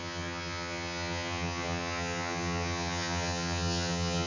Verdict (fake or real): fake